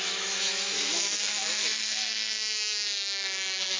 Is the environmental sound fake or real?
fake